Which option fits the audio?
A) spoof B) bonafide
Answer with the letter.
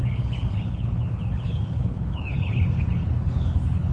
A